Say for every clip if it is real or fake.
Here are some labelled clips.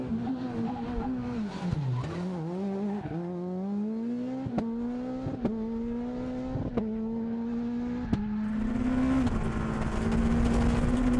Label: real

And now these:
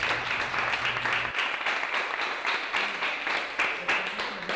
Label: real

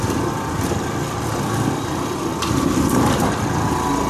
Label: real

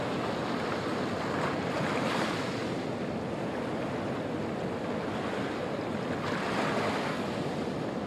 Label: real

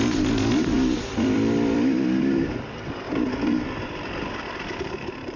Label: fake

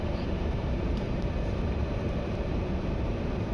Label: fake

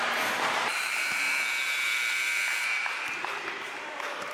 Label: fake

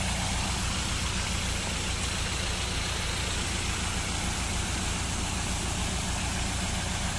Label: real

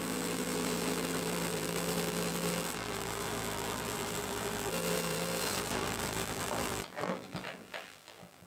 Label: fake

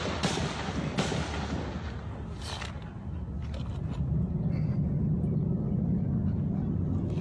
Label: real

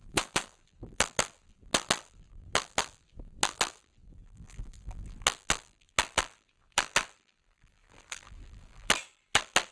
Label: fake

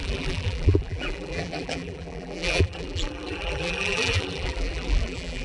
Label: fake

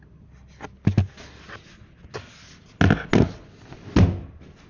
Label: real